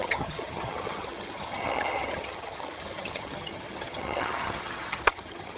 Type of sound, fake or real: fake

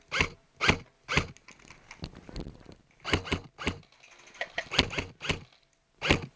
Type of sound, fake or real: real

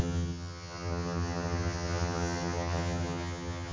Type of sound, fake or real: fake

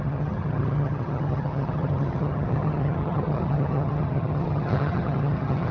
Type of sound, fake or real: fake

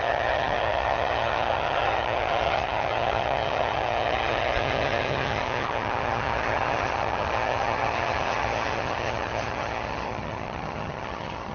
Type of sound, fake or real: fake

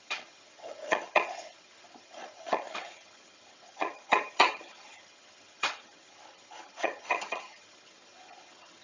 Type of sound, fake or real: fake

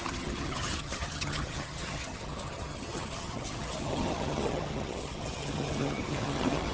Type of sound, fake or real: fake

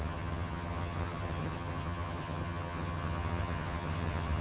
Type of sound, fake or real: fake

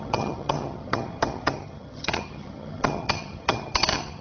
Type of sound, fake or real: fake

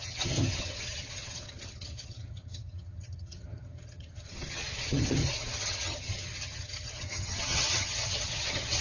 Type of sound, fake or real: fake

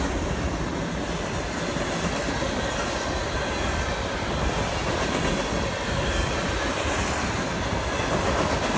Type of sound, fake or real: real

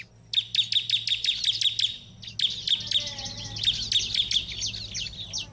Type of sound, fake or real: real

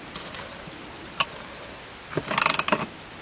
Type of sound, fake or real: real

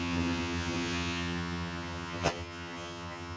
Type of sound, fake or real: fake